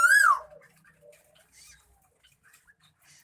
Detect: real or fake real